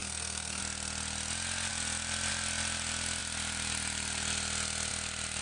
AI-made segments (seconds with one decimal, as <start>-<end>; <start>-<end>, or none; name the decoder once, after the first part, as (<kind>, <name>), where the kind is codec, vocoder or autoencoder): 0.0-0.6 (codec, SNAC)